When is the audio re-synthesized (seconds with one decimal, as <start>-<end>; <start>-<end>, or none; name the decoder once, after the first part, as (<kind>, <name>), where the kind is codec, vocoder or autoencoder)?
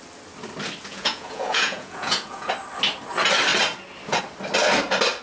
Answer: 0.9-2.5 (vocoder, Vocos)